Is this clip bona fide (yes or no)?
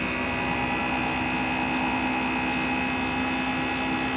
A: yes